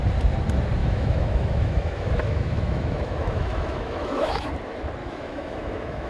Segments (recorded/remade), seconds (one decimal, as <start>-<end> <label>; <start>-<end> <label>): 0.0-0.8 recorded; 0.8-4.5 remade; 4.5-5.0 recorded; 5.0-6.1 remade

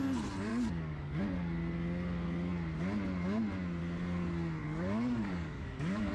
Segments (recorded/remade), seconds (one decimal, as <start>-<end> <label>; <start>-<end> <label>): 0.0-0.5 recorded; 0.5-1.2 remade; 1.2-4.6 recorded; 4.6-6.1 remade

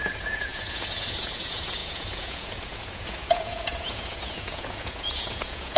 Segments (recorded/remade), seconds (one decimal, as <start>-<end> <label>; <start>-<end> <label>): 0.0-5.8 remade